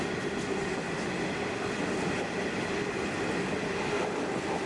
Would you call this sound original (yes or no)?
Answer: yes